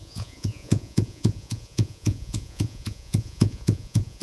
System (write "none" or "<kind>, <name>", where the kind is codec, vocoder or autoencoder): vocoder, Vocos